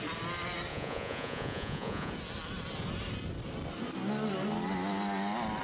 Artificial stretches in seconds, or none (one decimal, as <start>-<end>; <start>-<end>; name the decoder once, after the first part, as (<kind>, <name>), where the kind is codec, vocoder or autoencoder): 0.7-2.1 (vocoder, Vocos)